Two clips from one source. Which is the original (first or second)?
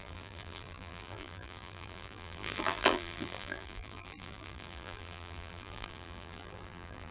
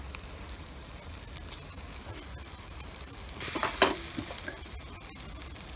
second